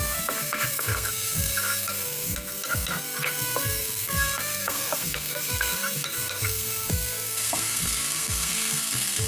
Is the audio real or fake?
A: fake